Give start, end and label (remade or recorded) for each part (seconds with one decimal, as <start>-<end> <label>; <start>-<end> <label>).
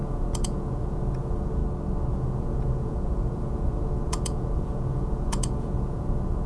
0.0-1.6 remade; 1.6-2.1 recorded; 2.1-6.5 remade